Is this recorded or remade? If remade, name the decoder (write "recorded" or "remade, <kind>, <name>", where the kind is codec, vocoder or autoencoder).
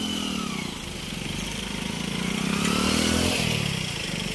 recorded